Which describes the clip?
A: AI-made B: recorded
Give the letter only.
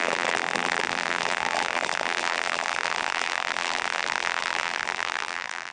A